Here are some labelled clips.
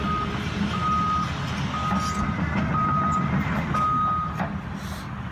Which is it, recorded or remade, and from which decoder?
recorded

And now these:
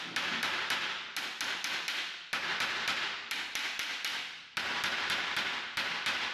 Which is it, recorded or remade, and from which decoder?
recorded